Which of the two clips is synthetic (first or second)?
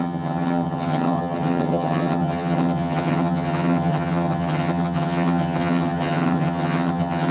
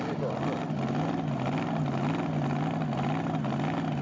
first